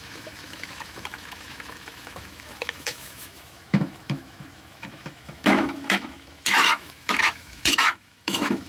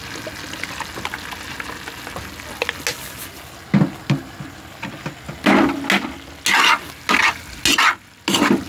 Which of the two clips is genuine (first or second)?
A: second